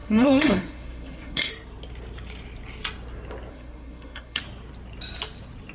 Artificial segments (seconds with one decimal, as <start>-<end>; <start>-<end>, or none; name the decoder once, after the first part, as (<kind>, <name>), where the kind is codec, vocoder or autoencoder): 0.0-1.5 (codec, SNAC); 3.5-4.4